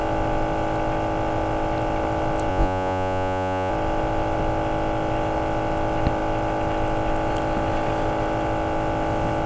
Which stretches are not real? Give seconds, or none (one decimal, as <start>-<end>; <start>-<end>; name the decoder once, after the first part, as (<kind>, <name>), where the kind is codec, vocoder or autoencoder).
2.5-3.7 (vocoder, Vocos)